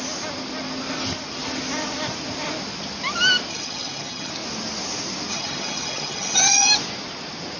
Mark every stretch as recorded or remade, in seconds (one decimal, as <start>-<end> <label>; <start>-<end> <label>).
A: 0.0-3.5 recorded; 3.5-4.3 remade; 4.3-5.3 recorded; 5.3-6.7 remade; 6.7-7.6 recorded